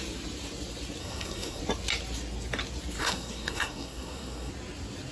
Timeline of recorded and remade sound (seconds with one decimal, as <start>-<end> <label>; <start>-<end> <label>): 0.0-1.0 recorded; 1.0-1.6 remade; 1.6-3.0 recorded; 3.0-4.5 remade; 4.5-5.1 recorded